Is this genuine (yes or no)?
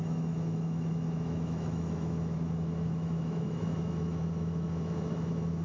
no